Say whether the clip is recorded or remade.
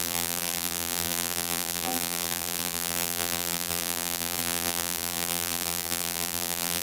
remade